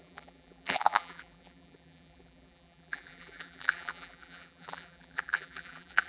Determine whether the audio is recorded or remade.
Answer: remade